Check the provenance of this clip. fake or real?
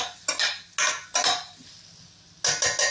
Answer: real